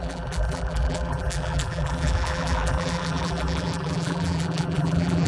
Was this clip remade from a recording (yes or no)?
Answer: yes